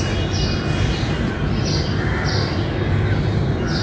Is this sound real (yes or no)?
yes